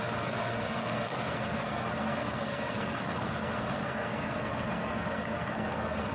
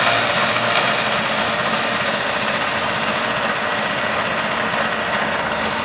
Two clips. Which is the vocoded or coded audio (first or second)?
first